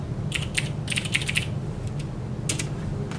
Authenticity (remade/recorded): recorded